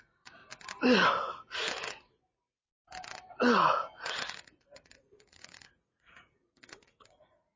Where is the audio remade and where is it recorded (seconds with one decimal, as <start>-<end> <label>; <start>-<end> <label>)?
0.0-0.4 remade; 0.4-3.3 recorded; 3.3-7.6 remade